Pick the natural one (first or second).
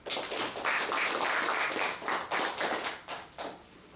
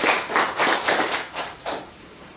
first